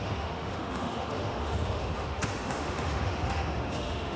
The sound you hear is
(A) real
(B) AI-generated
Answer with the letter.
B